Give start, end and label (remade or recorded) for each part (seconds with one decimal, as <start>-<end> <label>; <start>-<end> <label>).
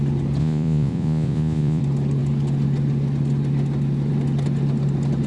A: 0.0-0.4 recorded; 0.4-1.8 remade; 1.8-5.3 recorded